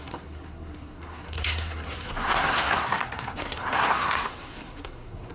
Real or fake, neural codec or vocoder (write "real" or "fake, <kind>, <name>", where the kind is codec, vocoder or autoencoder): fake, codec, SNAC